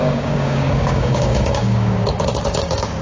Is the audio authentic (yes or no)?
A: no